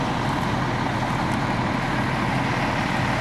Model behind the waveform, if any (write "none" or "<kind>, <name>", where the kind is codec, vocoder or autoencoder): none